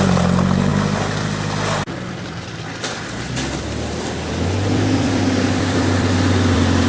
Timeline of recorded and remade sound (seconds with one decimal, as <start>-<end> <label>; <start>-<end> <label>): 0.0-0.7 remade; 0.7-2.1 recorded; 2.1-6.9 remade